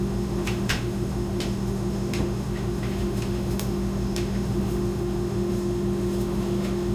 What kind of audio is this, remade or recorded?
remade